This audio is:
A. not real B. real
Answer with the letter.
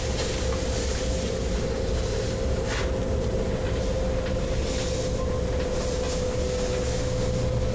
B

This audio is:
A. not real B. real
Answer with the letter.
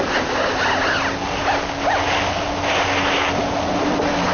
B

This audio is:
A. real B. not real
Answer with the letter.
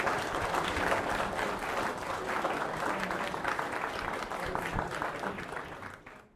A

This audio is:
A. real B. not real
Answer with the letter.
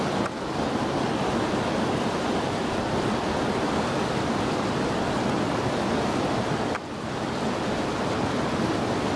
A